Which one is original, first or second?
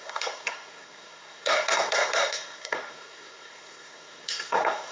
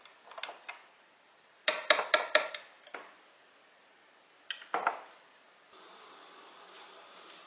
second